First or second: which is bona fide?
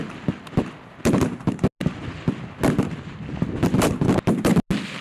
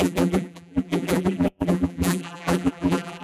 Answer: first